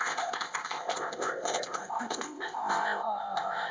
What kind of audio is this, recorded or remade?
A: remade